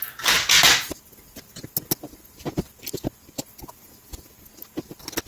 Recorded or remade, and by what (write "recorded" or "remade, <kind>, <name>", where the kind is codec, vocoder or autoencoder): recorded